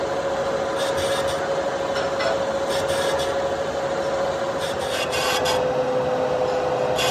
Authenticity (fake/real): real